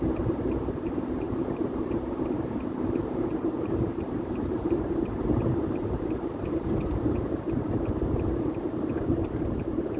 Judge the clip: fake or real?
fake